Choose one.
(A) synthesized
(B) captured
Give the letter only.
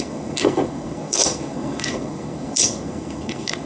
A